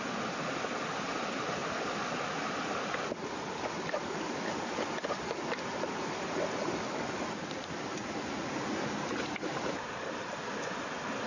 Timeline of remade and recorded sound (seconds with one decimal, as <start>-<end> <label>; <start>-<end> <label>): 0.0-11.3 recorded